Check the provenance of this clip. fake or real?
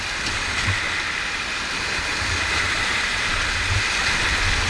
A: real